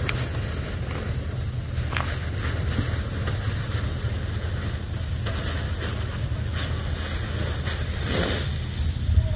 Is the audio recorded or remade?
recorded